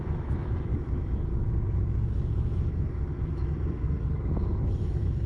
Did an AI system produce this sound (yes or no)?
yes